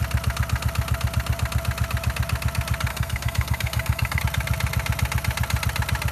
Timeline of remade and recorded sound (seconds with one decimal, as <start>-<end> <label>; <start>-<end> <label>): 0.0-2.9 recorded; 2.9-4.2 remade; 4.2-6.1 recorded